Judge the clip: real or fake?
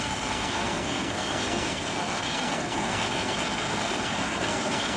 fake